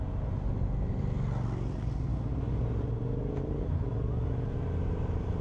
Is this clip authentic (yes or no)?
yes